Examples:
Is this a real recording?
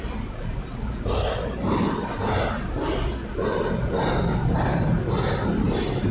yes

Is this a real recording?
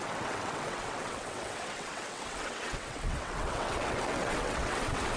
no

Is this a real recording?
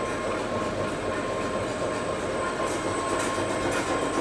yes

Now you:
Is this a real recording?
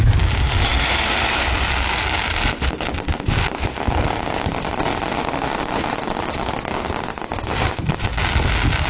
yes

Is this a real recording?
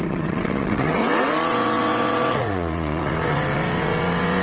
no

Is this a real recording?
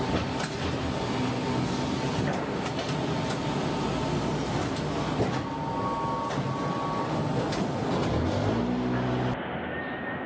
yes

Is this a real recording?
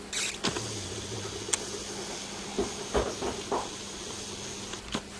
yes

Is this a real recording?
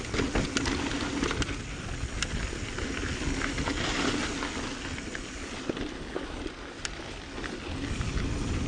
yes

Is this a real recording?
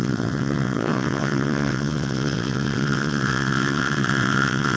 no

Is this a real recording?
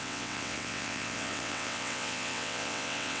no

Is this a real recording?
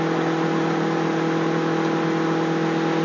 yes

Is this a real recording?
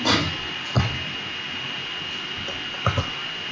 yes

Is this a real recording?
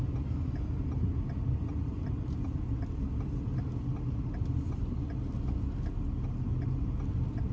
yes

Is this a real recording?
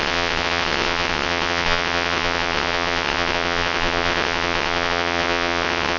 no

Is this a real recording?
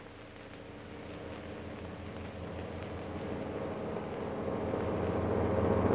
yes